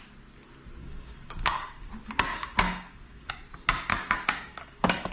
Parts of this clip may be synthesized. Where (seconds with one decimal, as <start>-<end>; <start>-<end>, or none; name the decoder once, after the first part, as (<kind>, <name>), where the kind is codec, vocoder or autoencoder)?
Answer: 0.8-1.9 (codec, DAC); 2.3-3.3; 3.9-5.1